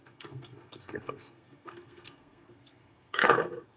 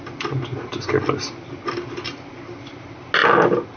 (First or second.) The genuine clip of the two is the second